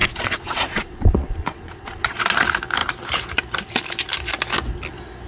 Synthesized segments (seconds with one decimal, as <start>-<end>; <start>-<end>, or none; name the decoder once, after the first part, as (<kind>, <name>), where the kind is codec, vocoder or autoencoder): 0.0-2.2 (vocoder, Vocos)